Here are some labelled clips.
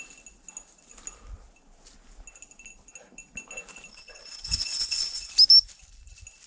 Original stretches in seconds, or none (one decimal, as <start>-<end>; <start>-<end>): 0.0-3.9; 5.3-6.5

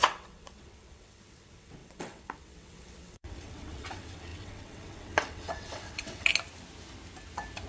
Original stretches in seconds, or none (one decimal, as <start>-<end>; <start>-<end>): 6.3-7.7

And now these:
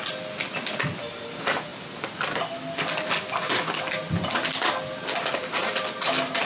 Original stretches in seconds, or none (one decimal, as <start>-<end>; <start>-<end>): 0.0-6.5

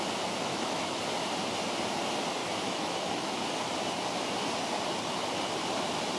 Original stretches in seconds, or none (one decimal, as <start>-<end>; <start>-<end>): 0.0-0.5; 1.0-2.4; 3.3-6.2

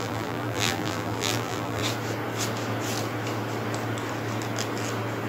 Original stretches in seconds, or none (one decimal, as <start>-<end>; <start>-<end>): 1.8-5.3

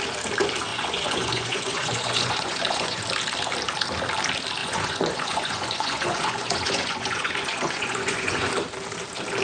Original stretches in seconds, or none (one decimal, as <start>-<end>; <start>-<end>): 0.0-0.7; 3.0-4.6; 8.5-9.4

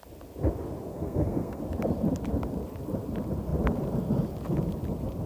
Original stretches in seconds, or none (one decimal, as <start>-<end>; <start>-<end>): 0.0-0.9; 1.6-5.3